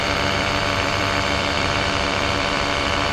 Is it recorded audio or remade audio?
remade